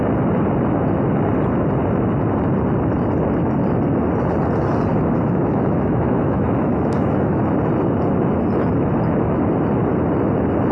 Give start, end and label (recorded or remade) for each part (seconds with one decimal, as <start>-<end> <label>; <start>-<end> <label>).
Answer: 0.0-4.9 recorded; 4.9-7.4 remade; 7.4-10.7 recorded